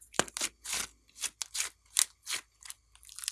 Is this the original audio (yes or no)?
yes